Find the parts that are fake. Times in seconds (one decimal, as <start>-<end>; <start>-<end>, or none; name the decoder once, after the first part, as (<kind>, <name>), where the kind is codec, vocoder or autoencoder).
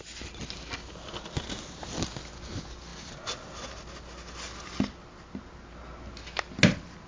none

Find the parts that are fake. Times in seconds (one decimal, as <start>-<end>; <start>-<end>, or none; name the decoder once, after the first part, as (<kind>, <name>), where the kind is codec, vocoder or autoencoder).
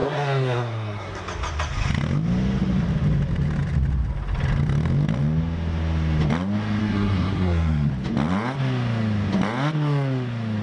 0.0-1.2 (codec, SNAC); 6.8-7.9